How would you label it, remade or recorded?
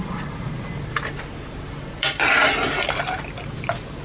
recorded